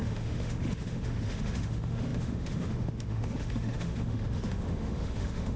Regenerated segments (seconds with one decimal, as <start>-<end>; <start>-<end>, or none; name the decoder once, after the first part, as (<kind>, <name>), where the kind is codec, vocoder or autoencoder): 0.0-5.6 (autoencoder, DAC-VAE)